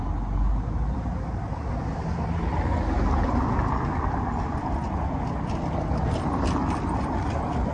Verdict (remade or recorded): recorded